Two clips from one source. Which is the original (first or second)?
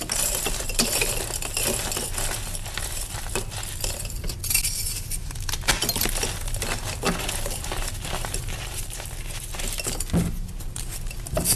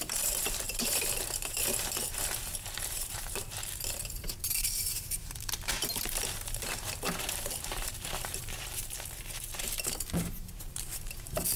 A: first